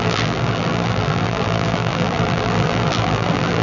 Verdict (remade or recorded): remade